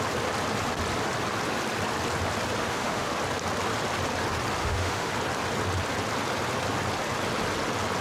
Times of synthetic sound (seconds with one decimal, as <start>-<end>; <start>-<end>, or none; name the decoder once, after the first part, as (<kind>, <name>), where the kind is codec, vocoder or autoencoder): 2.6-3.2 (autoencoder, DAC-VAE); 4.6-5.1